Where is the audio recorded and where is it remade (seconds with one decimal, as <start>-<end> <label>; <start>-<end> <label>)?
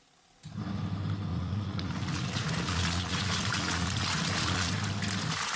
0.0-1.3 recorded; 1.3-4.7 remade; 4.7-5.6 recorded